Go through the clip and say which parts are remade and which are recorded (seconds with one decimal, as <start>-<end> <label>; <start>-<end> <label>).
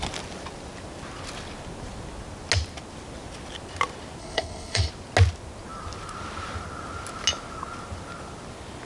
0.0-4.2 recorded; 4.2-4.9 remade; 4.9-8.9 recorded